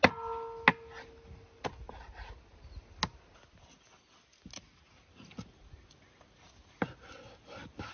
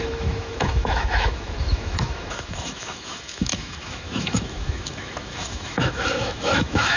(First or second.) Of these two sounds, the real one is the first